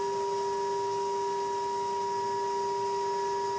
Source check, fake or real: real